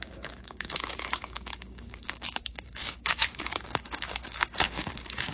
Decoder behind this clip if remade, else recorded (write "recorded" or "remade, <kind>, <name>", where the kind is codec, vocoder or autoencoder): remade, codec, DAC